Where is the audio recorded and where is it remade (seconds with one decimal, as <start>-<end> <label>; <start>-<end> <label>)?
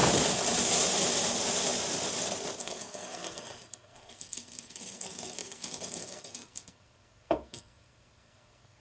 0.0-2.6 recorded; 2.6-8.8 remade